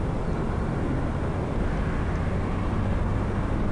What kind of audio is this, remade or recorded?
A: recorded